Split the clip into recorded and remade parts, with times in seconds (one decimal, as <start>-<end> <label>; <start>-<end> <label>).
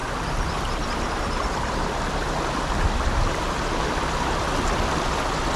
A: 0.0-3.4 remade; 3.4-5.6 recorded